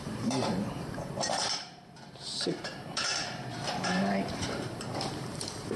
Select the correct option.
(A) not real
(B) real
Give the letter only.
A